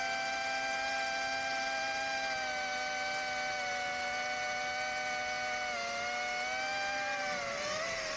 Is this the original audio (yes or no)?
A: yes